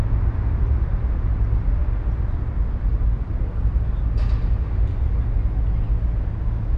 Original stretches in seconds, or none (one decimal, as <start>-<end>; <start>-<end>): 0.0-6.8